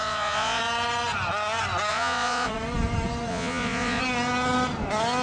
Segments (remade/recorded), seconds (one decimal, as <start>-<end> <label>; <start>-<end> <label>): 0.0-0.6 remade; 0.6-1.9 recorded; 1.9-2.5 remade; 2.5-3.3 recorded; 3.3-4.0 remade; 4.0-5.2 recorded